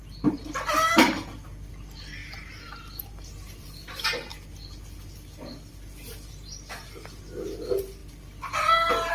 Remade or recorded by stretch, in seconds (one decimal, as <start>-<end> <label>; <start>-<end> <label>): 0.0-9.1 remade